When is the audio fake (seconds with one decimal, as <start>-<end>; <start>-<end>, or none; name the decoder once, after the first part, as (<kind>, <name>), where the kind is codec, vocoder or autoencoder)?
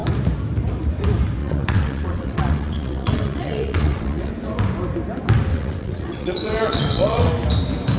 1.4-4.3 (vocoder, WaveNeXt); 5.5-7.3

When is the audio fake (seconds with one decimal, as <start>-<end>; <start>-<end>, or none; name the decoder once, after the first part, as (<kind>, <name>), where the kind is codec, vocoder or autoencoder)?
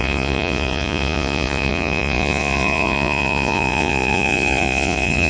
0.0-5.3 (vocoder, Vocos)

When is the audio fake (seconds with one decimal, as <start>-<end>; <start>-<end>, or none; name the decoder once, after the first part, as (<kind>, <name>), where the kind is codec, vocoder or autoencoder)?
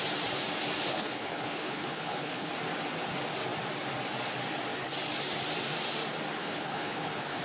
0.9-2.5 (codec, HILCodec); 6.4-7.4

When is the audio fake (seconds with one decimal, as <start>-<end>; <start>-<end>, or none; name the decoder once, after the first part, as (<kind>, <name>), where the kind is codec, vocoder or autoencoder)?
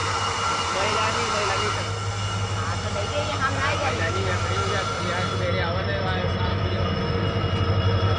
3.8-4.3 (autoencoder, DAC-VAE); 6.5-7.0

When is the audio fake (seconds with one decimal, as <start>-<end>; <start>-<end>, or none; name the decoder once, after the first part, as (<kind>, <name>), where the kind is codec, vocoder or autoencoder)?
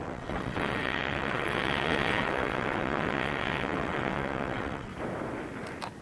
0.0-4.9 (vocoder, WaveNeXt)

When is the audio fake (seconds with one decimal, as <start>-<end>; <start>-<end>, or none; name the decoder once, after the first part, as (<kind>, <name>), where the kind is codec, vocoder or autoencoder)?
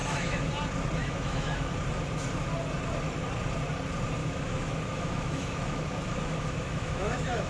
0.0-0.5 (autoencoder, DAC-VAE); 1.0-1.7; 4.2-7.5